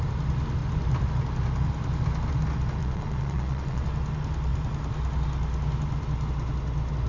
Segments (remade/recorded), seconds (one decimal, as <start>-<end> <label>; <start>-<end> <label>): 0.0-2.8 recorded; 2.8-3.8 remade; 3.8-7.1 recorded